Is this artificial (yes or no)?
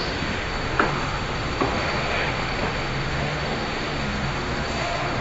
yes